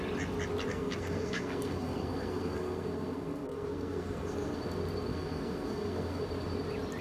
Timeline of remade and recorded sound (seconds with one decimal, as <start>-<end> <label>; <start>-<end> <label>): 0.0-0.7 recorded; 0.7-4.6 remade; 4.6-5.1 recorded; 5.1-6.2 remade; 6.2-7.0 recorded